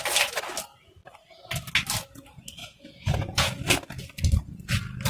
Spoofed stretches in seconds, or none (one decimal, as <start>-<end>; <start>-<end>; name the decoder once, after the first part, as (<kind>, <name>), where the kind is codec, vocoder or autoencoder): 2.6-3.6 (vocoder, Vocos)